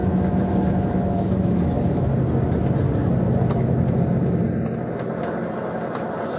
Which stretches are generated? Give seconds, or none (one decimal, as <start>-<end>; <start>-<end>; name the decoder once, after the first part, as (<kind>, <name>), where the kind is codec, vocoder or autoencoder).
0.0-2.1 (autoencoder, DAC-VAE)